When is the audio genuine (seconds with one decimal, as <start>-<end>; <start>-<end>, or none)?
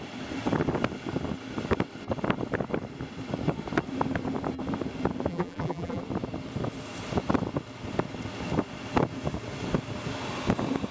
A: 0.0-5.3; 6.0-10.9